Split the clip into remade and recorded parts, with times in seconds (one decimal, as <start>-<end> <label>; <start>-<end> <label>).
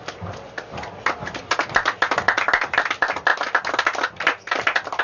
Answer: 0.0-5.0 recorded